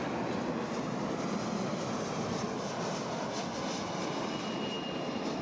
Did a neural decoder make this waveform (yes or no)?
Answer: no